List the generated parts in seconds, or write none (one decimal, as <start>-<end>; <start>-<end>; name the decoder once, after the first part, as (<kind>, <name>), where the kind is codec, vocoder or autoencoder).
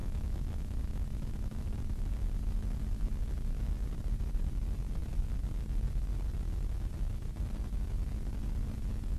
0.0-2.1 (autoencoder, DAC-VAE)